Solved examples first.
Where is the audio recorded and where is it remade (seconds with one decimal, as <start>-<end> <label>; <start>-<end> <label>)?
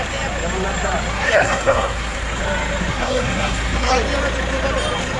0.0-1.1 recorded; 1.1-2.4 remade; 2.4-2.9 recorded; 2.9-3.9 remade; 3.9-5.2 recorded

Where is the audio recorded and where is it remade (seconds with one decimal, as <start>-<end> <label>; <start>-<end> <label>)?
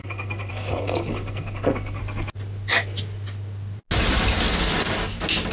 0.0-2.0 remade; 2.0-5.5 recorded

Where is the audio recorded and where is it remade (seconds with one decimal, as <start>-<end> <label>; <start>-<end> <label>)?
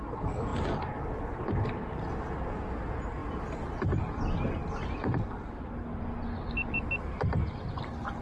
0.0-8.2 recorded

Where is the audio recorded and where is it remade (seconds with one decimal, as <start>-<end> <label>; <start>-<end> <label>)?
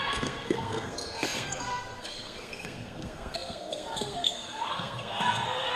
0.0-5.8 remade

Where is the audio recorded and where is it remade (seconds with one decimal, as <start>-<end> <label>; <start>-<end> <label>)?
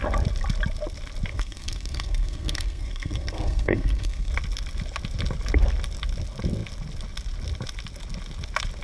0.0-1.3 recorded; 1.3-4.3 remade; 4.3-8.8 recorded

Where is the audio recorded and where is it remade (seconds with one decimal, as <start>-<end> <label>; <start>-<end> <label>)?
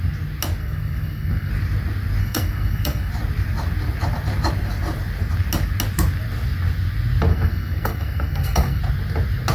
0.0-0.6 recorded; 0.6-1.5 remade; 1.5-2.2 recorded; 2.2-3.1 remade; 3.1-7.3 recorded; 7.3-8.8 remade; 8.8-9.5 recorded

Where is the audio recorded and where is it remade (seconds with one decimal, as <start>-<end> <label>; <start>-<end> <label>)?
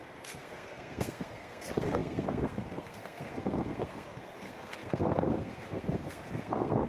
0.0-6.9 remade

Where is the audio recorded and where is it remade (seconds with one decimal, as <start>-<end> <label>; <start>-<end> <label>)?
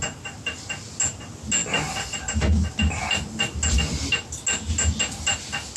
0.0-5.8 recorded